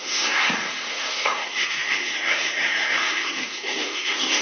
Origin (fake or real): fake